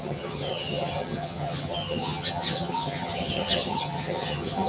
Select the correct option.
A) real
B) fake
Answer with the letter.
B